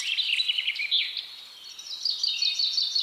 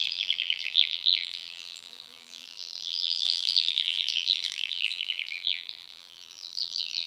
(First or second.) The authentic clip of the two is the first